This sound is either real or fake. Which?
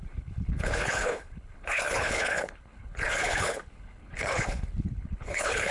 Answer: fake